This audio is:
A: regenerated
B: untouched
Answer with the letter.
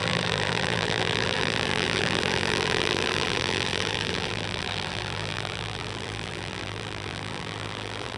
A